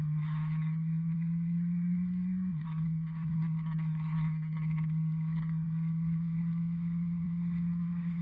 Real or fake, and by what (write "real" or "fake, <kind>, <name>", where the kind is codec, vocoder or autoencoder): fake, codec, SNAC